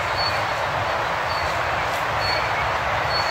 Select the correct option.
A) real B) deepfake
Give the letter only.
A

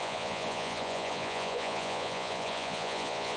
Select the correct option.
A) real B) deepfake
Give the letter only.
B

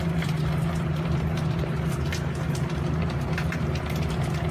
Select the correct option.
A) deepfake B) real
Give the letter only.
A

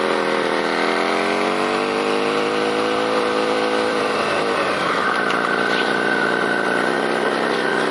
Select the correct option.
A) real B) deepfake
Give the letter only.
B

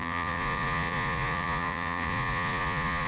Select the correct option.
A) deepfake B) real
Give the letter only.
A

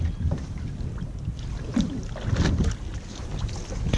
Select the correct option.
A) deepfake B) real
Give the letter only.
B